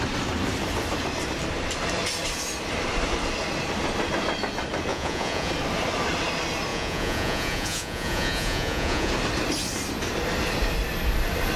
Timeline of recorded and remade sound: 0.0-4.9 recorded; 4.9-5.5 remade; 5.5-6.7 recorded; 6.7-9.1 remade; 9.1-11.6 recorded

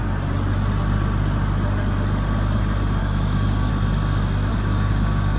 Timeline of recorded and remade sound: 0.0-3.0 recorded; 3.0-3.7 remade; 3.7-4.5 recorded; 4.5-5.4 remade

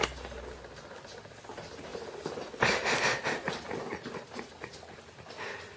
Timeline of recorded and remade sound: 0.0-5.8 recorded

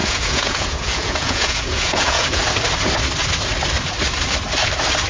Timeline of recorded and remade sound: 0.0-2.4 remade; 2.4-5.1 recorded

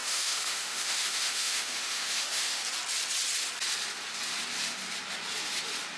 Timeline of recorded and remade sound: 0.0-2.6 remade; 2.6-6.0 recorded